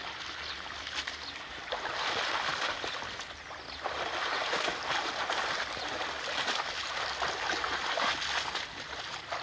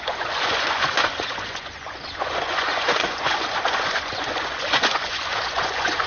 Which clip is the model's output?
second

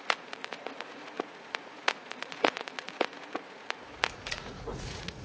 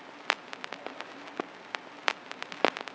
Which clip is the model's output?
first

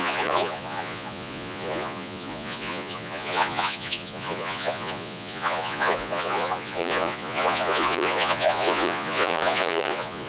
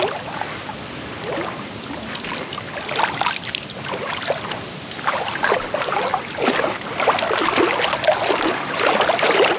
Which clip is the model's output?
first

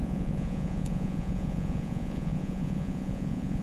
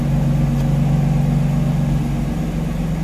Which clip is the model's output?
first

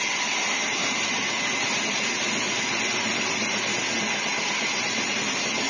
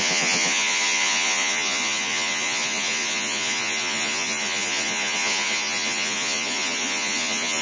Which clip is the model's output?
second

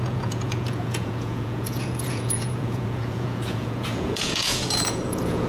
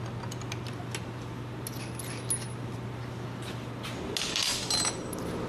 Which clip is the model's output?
first